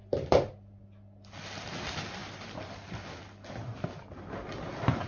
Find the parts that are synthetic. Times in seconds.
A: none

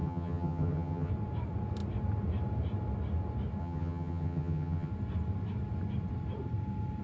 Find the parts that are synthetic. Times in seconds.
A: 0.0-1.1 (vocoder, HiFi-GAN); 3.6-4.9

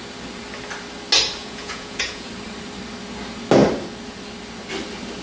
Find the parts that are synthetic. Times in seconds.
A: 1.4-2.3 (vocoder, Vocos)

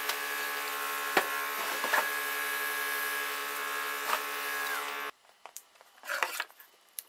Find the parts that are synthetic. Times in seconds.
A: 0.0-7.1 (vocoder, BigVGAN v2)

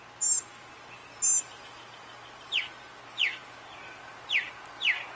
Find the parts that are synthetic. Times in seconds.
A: none

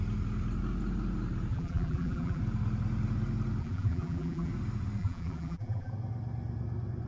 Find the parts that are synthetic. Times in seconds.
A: 1.5-2.4 (vocoder, BigVGAN v2); 3.6-4.5; 5.0-5.9

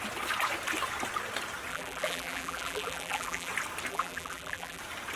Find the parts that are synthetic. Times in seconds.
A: 1.7-3.5 (vocoder, BigVGAN v2); 3.9-4.8

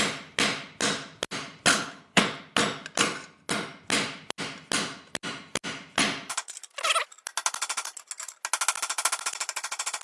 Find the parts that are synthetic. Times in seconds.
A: 1.7-2.2 (codec, HILCodec)